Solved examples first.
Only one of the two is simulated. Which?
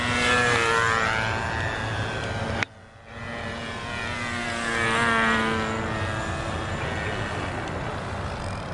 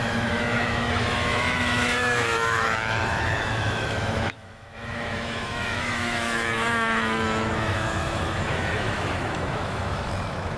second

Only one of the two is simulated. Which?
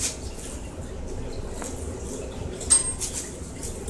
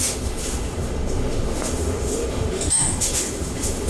second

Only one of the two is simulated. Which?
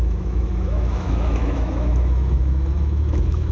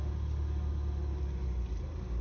first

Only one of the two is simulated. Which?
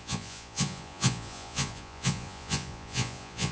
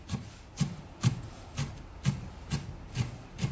first